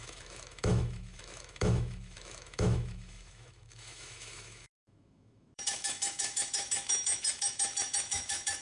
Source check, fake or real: fake